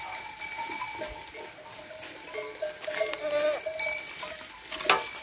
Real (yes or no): yes